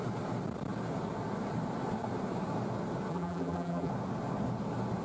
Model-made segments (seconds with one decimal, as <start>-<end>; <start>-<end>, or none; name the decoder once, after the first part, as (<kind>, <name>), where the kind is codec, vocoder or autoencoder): 3.1-3.9 (vocoder, BigVGAN v2)